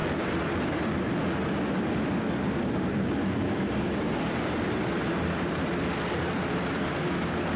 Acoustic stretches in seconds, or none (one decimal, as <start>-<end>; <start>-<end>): 0.0-3.4; 4.3-7.6

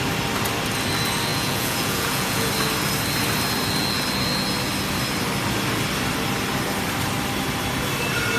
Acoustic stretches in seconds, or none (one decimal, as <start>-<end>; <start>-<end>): 0.0-1.3; 2.5-8.4

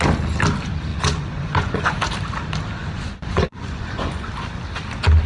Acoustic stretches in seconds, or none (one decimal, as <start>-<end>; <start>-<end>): 0.0-0.9; 2.0-2.8; 4.3-5.3

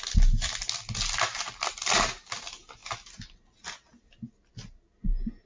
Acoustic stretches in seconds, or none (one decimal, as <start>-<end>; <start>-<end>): 0.0-5.5

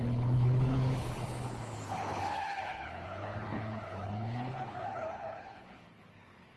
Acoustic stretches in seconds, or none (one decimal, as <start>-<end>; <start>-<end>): none

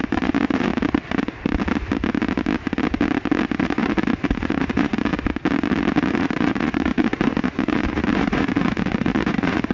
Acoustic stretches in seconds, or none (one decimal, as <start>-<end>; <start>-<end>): 0.7-3.6; 5.1-6.1

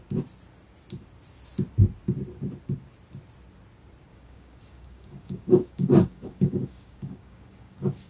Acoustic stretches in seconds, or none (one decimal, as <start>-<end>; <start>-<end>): 0.0-4.1